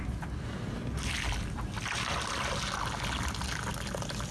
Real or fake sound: real